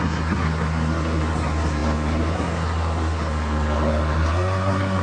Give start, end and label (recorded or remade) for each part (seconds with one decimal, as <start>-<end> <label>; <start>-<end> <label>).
0.0-5.0 remade